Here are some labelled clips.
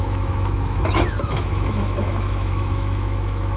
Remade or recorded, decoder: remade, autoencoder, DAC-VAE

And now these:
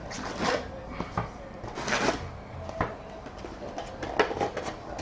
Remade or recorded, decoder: recorded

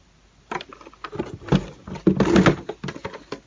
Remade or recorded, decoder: recorded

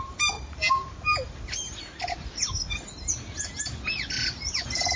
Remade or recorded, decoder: recorded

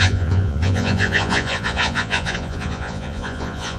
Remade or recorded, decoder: remade, vocoder, Vocos